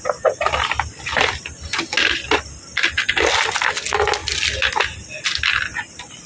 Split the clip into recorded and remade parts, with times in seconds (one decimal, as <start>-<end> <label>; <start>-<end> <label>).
0.0-6.3 recorded